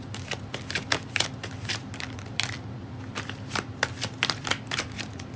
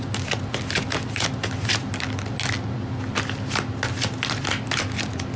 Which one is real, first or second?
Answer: second